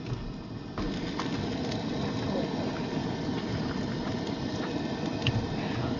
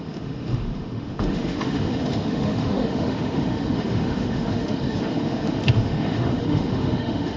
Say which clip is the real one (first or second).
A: first